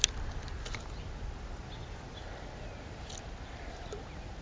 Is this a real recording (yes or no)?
yes